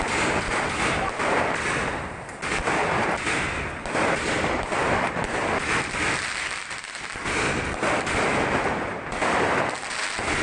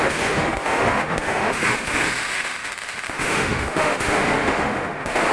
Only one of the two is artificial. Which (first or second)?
second